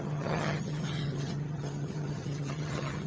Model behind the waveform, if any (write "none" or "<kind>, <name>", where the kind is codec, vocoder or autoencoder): vocoder, HiFi-GAN